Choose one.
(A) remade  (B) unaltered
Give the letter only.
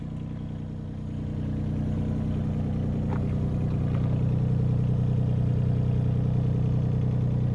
B